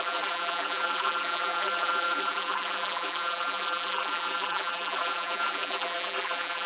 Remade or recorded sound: remade